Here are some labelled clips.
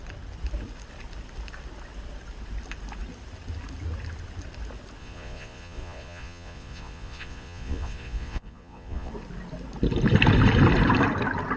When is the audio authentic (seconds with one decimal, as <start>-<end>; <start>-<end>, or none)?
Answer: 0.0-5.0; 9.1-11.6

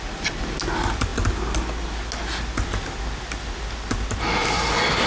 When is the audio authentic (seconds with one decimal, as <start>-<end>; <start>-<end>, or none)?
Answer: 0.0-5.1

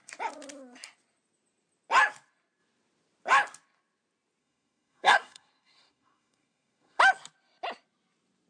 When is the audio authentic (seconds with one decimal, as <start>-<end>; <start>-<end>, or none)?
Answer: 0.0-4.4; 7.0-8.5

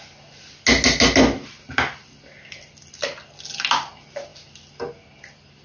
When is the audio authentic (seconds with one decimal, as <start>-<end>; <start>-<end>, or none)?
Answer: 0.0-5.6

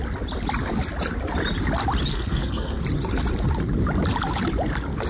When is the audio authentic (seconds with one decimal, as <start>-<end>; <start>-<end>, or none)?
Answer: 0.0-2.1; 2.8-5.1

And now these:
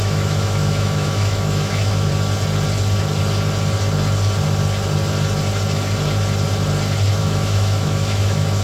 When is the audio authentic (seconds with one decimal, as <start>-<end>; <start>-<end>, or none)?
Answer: 2.1-7.2